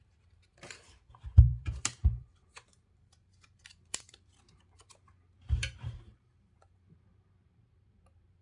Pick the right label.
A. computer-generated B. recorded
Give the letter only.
A